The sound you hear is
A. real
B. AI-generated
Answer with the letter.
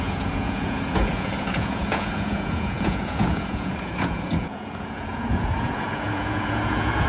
B